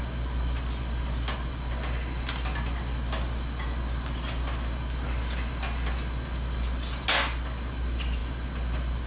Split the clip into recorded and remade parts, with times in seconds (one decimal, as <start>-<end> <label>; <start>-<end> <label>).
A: 0.0-9.1 recorded